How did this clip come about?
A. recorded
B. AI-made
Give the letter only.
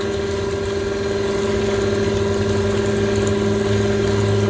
A